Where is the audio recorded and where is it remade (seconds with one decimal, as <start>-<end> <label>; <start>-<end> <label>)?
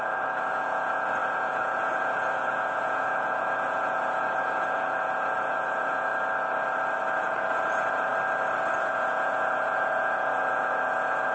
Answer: 0.0-6.1 remade; 6.1-7.1 recorded; 7.1-8.1 remade; 8.1-8.8 recorded; 8.8-11.3 remade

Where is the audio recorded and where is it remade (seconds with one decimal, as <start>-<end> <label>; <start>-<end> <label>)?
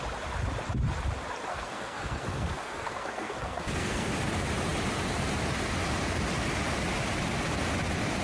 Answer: 0.0-1.5 recorded; 1.5-4.1 remade; 4.1-8.2 recorded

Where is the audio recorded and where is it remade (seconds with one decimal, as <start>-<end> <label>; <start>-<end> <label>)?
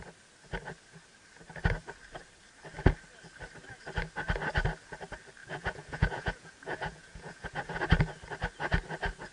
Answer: 0.0-5.4 recorded; 5.4-7.8 remade; 7.8-9.3 recorded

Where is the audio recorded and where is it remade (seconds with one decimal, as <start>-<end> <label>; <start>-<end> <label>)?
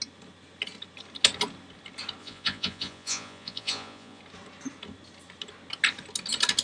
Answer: 0.0-2.2 recorded; 2.2-4.2 remade; 4.2-6.6 recorded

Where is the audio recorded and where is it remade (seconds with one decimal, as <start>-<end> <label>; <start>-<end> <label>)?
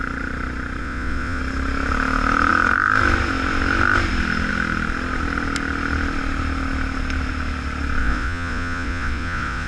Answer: 0.0-0.8 recorded; 0.8-1.4 remade; 1.4-8.0 recorded; 8.0-9.7 remade